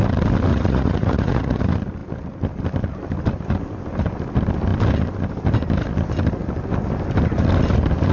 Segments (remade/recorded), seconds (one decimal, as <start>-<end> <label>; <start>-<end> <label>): 0.0-0.5 recorded; 0.5-1.6 remade; 1.6-8.1 recorded